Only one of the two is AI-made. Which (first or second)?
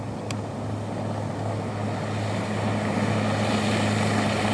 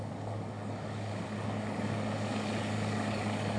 second